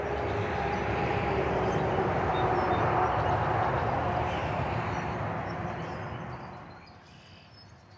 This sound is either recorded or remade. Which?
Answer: recorded